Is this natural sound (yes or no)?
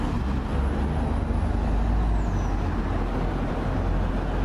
yes